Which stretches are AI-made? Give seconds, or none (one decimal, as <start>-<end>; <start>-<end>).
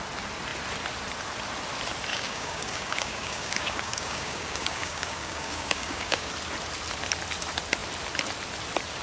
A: 2.1-6.3